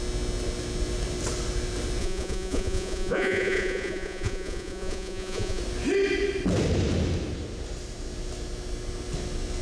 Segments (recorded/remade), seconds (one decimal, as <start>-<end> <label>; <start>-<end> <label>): 0.0-2.0 recorded; 2.0-5.6 remade; 5.6-9.6 recorded